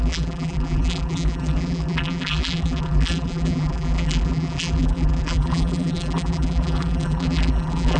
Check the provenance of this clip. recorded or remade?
remade